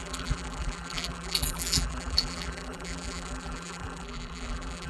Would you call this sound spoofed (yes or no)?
yes